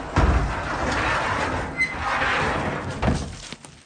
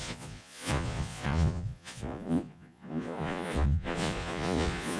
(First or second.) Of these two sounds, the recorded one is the first